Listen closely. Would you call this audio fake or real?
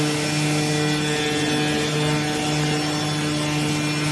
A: real